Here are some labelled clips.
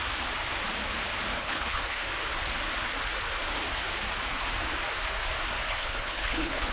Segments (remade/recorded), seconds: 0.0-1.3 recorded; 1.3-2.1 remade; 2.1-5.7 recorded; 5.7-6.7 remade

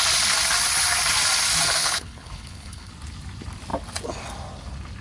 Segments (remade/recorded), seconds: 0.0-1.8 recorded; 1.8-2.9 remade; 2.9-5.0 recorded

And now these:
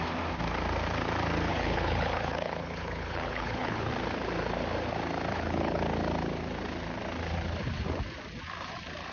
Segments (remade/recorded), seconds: 0.0-1.5 recorded; 1.5-3.9 remade; 3.9-5.3 recorded; 5.3-5.8 remade; 5.8-9.1 recorded

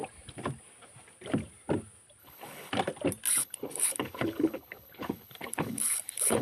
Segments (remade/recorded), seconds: 0.0-2.2 recorded; 2.2-2.7 remade; 2.7-3.4 recorded; 3.4-6.4 remade

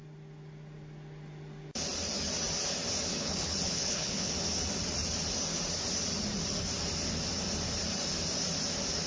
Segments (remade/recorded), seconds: 0.0-3.2 recorded; 3.2-4.3 remade; 4.3-9.1 recorded

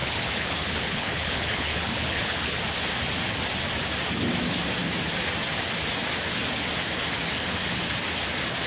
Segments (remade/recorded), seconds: 0.0-2.6 remade; 2.6-8.7 recorded